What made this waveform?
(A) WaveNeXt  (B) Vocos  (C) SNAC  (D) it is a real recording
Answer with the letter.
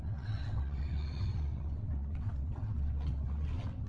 A